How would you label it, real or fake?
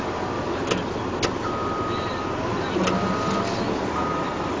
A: real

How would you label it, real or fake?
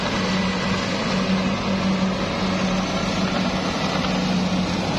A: real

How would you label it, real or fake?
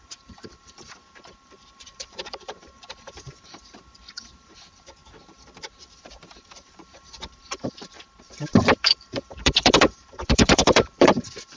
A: fake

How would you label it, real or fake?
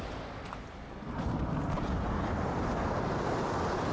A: real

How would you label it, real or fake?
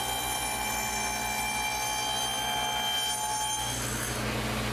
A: real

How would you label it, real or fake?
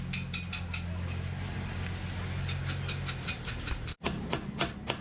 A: real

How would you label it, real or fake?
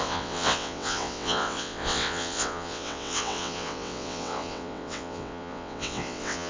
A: fake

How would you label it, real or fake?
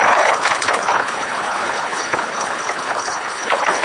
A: fake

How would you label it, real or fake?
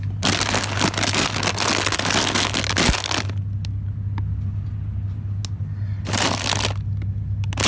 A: real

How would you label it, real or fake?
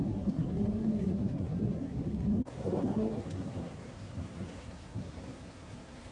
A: fake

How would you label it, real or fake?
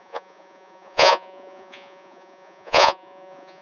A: fake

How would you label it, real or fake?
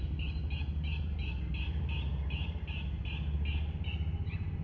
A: real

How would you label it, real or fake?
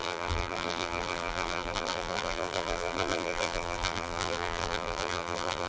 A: fake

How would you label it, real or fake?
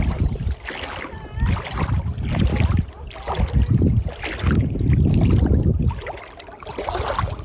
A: real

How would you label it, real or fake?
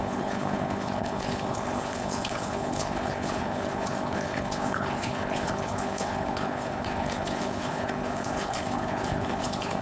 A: fake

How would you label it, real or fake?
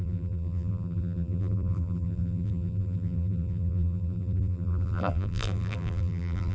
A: fake